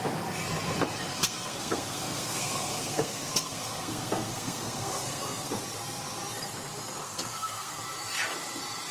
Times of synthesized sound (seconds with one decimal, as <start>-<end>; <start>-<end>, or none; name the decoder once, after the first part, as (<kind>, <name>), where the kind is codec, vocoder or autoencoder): 1.1-5.6 (codec, SNAC); 7.0-7.8